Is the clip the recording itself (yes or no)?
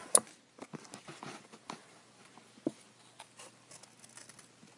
yes